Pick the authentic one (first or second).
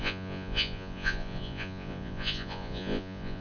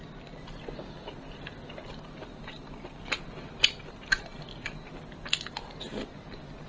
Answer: second